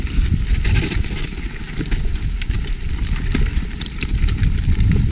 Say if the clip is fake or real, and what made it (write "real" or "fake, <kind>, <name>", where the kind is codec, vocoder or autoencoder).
real